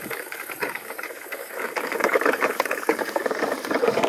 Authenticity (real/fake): fake